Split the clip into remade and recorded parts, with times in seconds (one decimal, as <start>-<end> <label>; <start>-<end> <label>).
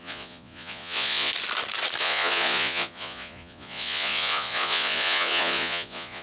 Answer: 0.0-1.3 remade; 1.3-2.0 recorded; 2.0-6.2 remade